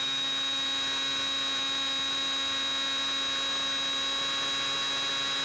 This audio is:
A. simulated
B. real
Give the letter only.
B